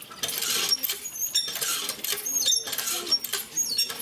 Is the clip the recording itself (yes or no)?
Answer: yes